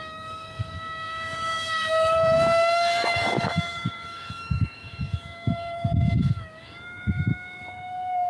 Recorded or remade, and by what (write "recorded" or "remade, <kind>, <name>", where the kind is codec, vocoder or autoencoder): remade, codec, DAC